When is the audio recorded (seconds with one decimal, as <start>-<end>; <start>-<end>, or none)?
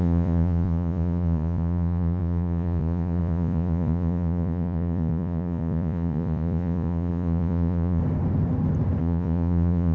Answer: 8.0-9.0